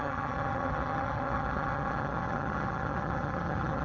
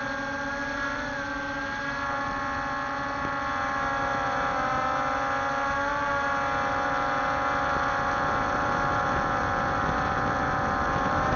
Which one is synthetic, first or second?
first